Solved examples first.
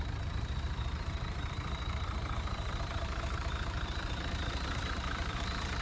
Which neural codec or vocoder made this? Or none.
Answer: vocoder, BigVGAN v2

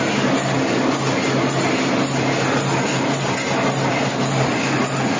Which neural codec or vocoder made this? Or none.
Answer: none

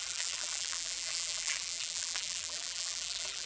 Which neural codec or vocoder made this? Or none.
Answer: vocoder, BigVGAN v2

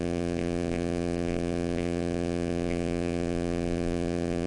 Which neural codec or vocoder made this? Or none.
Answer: vocoder, BigVGAN v2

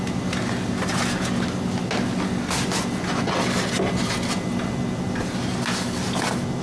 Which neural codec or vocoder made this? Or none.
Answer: none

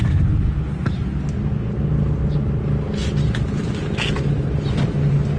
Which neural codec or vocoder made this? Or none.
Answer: none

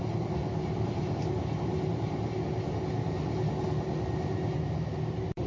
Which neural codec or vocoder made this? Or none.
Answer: none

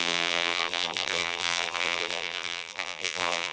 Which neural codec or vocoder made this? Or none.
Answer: vocoder, BigVGAN v2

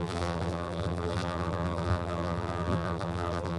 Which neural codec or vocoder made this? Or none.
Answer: vocoder, BigVGAN v2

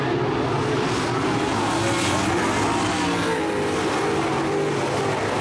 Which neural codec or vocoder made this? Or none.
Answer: none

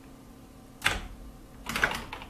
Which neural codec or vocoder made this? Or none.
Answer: none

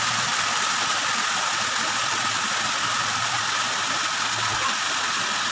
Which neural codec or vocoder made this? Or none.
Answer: none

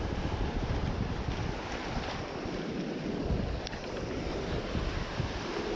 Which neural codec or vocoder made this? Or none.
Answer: vocoder, BigVGAN v2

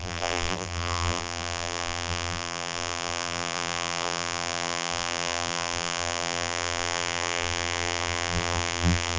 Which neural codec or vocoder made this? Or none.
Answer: vocoder, BigVGAN v2